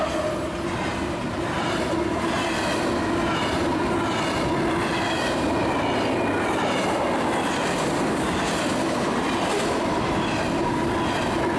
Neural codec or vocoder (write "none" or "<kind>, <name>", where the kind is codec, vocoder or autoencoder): none